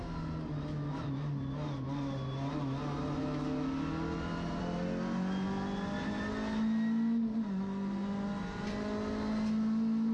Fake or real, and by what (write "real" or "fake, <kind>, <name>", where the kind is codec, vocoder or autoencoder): real